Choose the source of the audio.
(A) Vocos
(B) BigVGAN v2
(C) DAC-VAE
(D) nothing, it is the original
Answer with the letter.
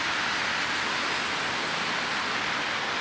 D